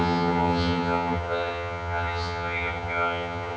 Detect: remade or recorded remade